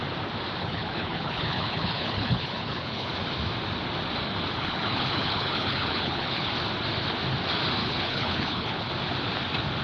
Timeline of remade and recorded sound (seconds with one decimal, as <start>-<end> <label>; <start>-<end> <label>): 0.0-0.6 recorded; 0.6-3.1 remade; 3.1-4.6 recorded; 4.6-6.5 remade; 6.5-7.8 recorded; 7.8-8.9 remade; 8.9-9.8 recorded